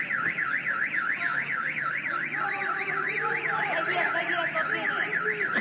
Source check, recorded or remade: remade